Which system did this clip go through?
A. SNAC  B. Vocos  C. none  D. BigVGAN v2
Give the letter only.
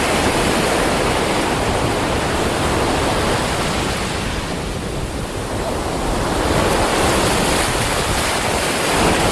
C